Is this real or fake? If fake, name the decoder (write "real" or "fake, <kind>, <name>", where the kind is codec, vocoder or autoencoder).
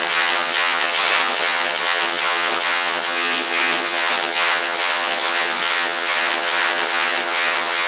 fake, vocoder, HiFi-GAN